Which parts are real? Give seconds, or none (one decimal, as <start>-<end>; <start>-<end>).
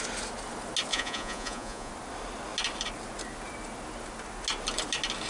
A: 0.0-0.9; 1.9-5.3